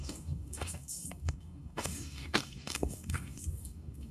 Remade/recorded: remade